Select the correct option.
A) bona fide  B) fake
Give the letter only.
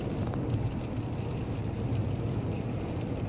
A